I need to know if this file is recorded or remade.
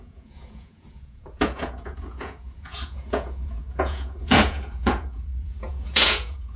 remade